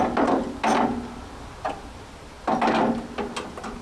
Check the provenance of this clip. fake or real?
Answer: real